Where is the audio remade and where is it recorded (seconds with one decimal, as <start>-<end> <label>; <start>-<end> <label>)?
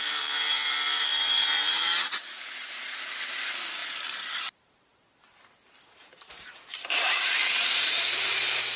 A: 0.0-8.8 remade